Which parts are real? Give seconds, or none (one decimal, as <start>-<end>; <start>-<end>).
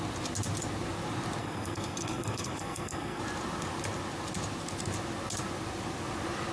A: 0.0-1.4; 3.2-6.5